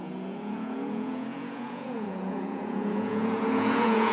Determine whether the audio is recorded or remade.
remade